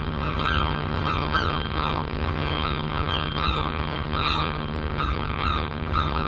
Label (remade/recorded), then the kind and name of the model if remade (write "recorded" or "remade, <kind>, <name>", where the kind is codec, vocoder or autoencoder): remade, vocoder, HiFi-GAN